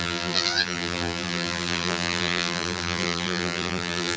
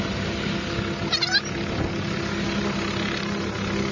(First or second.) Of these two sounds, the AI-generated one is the first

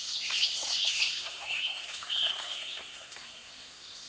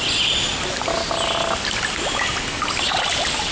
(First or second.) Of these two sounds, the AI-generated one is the first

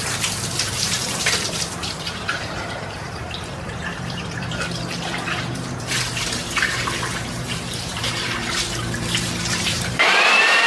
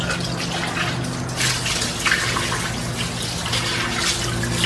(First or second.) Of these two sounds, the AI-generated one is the first